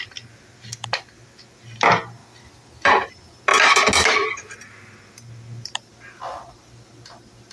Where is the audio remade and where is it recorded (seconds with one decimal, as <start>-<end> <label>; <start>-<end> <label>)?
0.0-2.2 recorded; 2.2-3.1 remade; 3.1-7.5 recorded